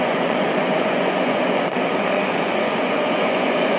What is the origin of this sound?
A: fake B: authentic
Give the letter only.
A